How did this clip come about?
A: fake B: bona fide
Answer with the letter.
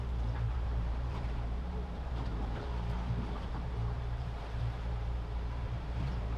A